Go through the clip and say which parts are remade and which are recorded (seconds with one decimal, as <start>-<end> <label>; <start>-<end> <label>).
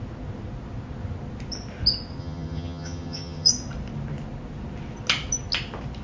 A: 0.0-2.2 recorded; 2.2-3.5 remade; 3.5-6.0 recorded